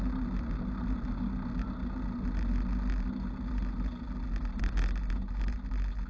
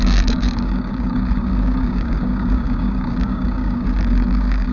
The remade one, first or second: second